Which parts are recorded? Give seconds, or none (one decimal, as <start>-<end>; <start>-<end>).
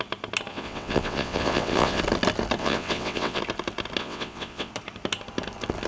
0.0-0.5; 2.0-2.6; 3.4-4.0; 4.7-5.9